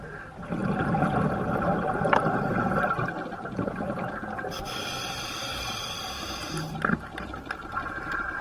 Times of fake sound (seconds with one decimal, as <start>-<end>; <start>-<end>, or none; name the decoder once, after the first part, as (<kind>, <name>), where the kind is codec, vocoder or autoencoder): none